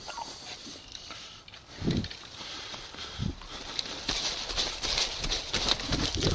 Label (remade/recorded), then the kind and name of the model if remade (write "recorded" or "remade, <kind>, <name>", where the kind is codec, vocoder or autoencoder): recorded